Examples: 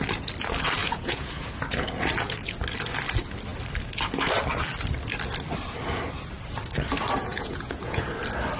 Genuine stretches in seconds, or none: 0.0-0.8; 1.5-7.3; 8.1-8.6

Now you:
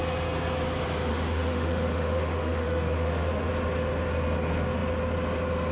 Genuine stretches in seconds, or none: 0.0-1.1; 3.5-5.7

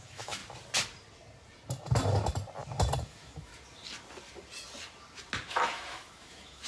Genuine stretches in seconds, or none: 0.4-3.0; 3.5-5.5